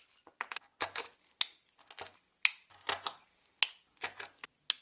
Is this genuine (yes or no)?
yes